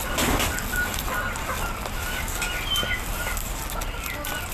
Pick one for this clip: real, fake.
real